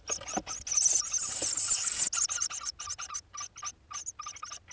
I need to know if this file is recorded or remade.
recorded